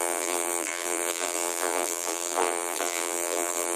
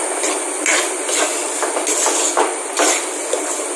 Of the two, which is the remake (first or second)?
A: first